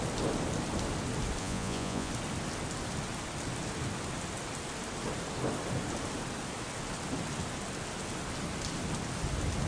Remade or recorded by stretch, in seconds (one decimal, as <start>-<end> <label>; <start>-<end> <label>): 0.0-1.4 recorded; 1.4-2.1 remade; 2.1-9.7 recorded